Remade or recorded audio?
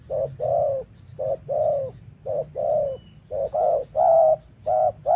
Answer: recorded